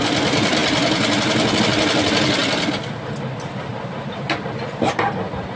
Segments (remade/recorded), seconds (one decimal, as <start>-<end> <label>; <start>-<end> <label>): 0.0-5.6 recorded

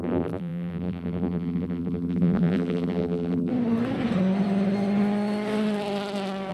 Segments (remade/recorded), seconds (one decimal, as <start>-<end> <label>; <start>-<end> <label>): 0.0-3.5 remade; 3.5-6.5 recorded

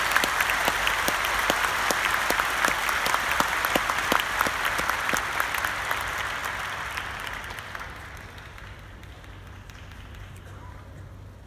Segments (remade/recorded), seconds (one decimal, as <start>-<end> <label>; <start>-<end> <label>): 0.0-11.5 recorded